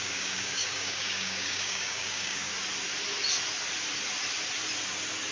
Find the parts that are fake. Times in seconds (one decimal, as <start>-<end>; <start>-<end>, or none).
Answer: 0.0-2.5

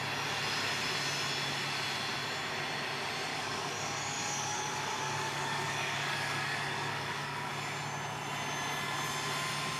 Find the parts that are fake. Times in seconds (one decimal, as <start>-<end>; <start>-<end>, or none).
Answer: 3.3-7.5

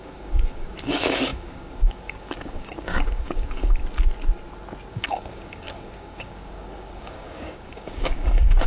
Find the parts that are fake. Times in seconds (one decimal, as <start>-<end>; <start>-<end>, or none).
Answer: 0.0-3.8; 4.9-8.7

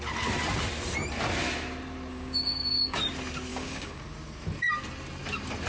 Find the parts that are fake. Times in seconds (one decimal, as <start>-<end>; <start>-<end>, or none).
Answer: 2.1-3.0; 3.5-4.0

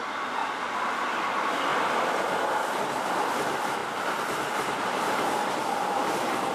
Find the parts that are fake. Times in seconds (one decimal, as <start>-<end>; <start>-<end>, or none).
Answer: none

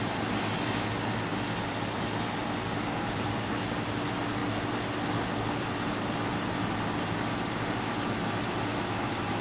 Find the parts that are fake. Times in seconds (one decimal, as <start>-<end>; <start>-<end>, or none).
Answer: 2.7-3.3